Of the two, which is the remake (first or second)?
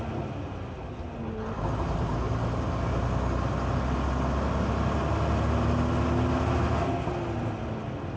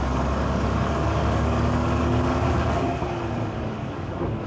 second